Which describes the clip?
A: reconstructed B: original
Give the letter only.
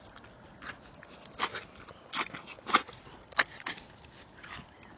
B